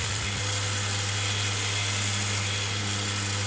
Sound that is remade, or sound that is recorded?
recorded